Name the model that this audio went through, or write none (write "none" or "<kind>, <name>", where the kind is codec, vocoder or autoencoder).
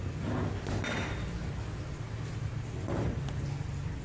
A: none